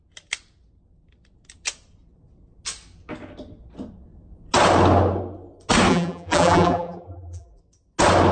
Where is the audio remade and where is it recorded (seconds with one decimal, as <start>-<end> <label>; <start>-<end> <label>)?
0.0-5.9 recorded; 5.9-7.6 remade; 7.6-8.3 recorded